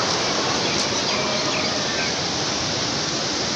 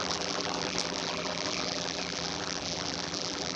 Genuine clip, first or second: first